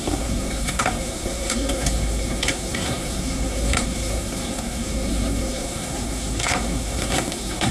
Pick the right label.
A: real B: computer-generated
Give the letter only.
B